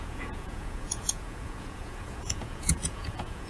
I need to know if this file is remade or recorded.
remade